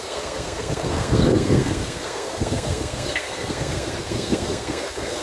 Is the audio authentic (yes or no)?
no